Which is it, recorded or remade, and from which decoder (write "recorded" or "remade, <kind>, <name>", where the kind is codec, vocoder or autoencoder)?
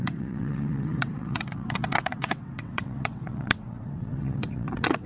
remade, vocoder, WaveNeXt